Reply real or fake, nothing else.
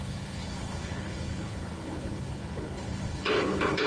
fake